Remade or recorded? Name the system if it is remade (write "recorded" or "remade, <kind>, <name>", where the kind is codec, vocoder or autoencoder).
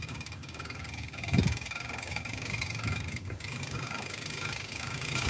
remade, codec, DAC